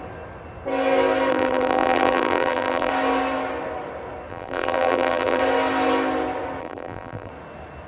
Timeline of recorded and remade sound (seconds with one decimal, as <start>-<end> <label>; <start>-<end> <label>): 0.0-1.3 recorded; 1.3-2.9 remade; 2.9-4.3 recorded; 4.3-5.4 remade; 5.4-6.6 recorded; 6.6-7.3 remade; 7.3-7.9 recorded